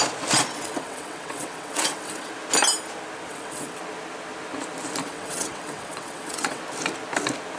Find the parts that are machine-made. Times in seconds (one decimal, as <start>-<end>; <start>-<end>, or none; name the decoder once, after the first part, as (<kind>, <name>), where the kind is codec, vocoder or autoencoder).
0.5-2.3 (vocoder, WaveNeXt); 3.3-3.8; 5.0-6.6